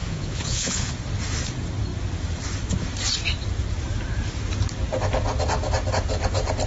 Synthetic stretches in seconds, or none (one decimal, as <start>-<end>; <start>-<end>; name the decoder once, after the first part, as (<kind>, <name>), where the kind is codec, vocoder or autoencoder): 0.0-0.9 (vocoder, Vocos)